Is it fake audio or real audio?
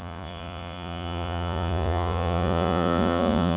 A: fake